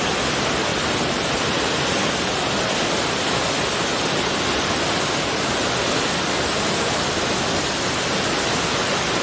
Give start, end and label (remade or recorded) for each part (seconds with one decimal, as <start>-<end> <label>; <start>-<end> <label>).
0.0-9.2 recorded